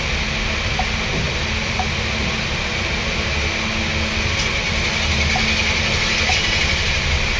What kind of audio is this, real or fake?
real